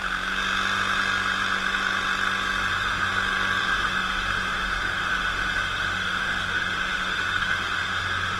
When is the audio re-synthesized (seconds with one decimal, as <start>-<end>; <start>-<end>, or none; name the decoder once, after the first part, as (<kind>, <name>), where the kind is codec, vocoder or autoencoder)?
2.7-3.1 (autoencoder, DAC-VAE); 3.6-8.4